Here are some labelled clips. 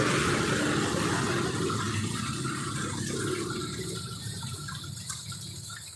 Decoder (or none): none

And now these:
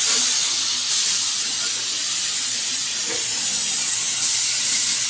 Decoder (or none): none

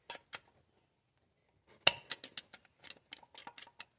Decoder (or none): none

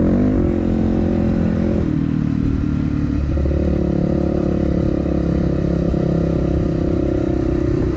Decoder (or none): none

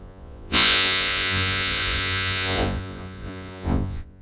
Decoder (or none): vocoder, Vocos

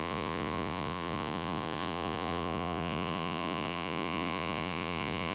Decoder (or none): vocoder, Vocos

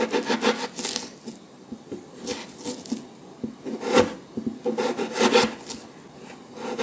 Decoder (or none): none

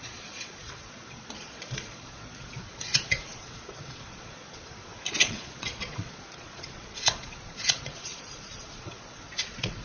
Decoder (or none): vocoder, Vocos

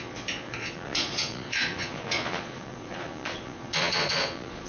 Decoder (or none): vocoder, Vocos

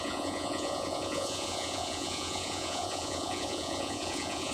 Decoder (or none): vocoder, Vocos